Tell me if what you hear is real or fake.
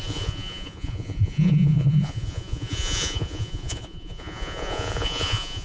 fake